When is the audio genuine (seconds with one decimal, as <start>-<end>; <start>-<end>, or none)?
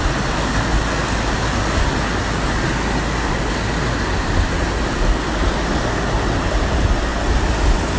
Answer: 0.0-8.0